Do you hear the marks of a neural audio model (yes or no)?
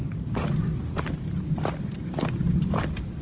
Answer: yes